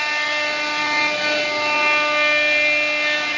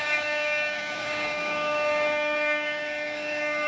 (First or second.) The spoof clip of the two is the second